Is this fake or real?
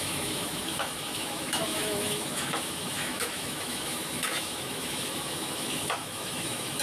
fake